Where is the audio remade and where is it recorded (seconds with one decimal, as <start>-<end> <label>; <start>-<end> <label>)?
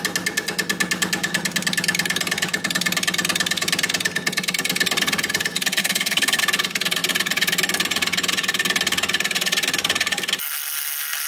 0.0-5.8 recorded; 5.8-6.4 remade; 6.4-11.3 recorded